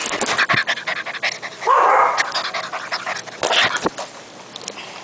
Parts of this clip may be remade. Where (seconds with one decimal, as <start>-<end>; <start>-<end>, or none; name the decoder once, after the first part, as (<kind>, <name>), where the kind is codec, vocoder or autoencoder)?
none